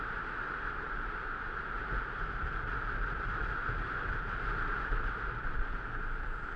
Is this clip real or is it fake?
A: real